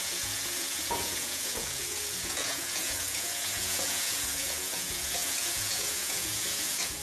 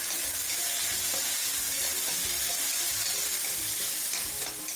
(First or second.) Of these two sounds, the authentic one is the second